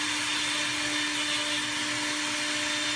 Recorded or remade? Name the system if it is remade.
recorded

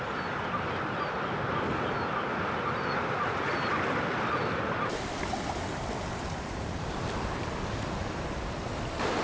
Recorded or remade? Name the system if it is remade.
recorded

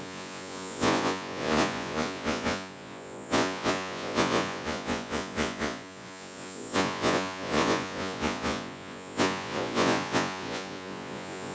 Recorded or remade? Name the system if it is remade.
remade, vocoder, Vocos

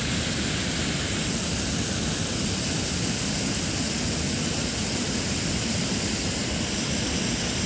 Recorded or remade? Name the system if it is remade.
recorded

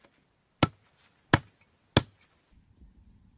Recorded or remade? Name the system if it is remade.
recorded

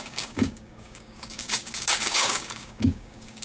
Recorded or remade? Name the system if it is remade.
remade, codec, DAC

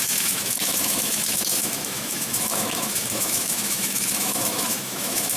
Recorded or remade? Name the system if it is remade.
remade, autoencoder, DAC-VAE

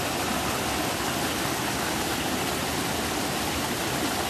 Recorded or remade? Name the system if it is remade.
recorded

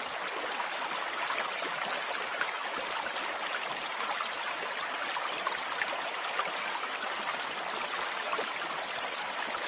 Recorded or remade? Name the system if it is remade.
recorded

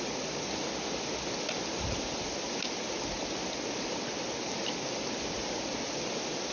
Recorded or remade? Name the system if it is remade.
recorded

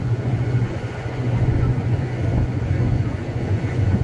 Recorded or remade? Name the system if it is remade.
remade, vocoder, Vocos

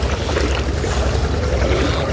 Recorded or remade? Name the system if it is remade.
recorded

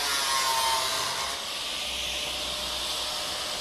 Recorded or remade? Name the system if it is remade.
recorded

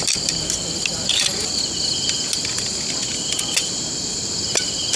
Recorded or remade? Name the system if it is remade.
recorded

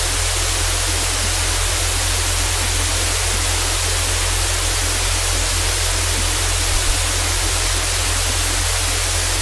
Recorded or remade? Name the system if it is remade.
recorded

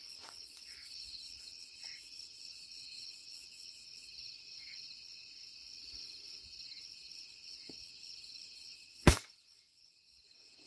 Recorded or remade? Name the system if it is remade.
remade, vocoder, WaveNeXt